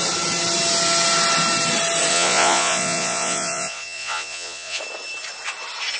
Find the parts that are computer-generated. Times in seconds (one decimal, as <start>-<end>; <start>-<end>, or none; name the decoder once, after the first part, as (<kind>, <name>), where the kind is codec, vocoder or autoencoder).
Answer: 2.1-4.8 (vocoder, Vocos)